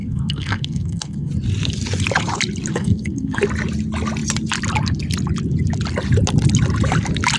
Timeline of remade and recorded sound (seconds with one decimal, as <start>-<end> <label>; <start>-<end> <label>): 0.0-1.3 remade; 1.3-2.7 recorded; 2.7-3.4 remade; 3.4-7.4 recorded